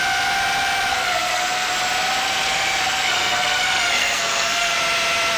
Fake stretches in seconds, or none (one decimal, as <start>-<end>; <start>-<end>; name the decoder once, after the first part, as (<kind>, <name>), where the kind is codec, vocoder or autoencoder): 0.9-1.7 (codec, SNAC); 2.2-4.8